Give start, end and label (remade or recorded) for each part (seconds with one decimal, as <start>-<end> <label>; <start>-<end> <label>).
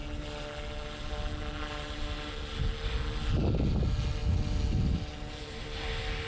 0.0-6.3 recorded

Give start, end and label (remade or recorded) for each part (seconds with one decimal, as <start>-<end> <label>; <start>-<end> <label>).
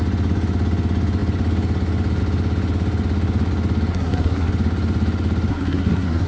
0.0-3.9 recorded; 3.9-4.5 remade; 4.5-5.5 recorded; 5.5-6.3 remade